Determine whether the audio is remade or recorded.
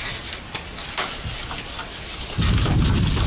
recorded